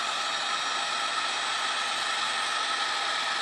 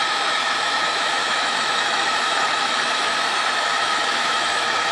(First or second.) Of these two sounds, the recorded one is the first